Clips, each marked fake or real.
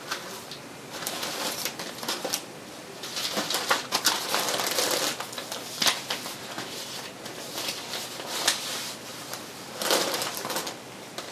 real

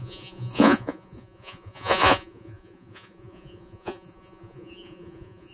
fake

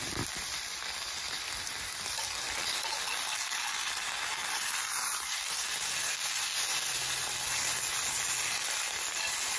real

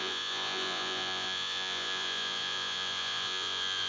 fake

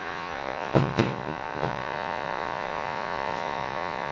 fake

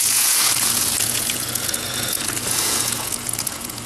fake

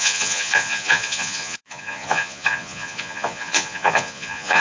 fake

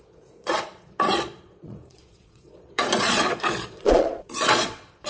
fake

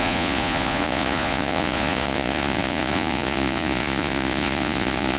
fake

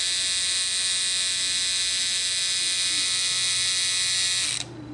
real